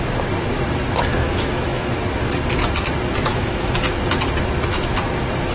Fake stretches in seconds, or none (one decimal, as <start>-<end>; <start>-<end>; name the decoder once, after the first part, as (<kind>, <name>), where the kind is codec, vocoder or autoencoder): 1.2-1.9 (autoencoder, DAC-VAE); 3.3-3.9